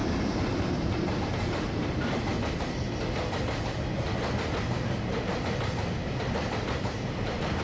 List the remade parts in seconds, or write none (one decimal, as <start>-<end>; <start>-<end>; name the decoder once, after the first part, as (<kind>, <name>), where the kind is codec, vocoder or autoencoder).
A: 0.6-2.3 (vocoder, BigVGAN v2); 6.7-7.6